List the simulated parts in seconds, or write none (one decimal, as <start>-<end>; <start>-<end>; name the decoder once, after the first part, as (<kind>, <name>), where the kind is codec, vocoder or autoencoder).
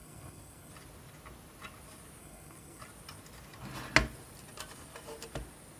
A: 0.0-0.7 (codec, SNAC); 2.2-2.8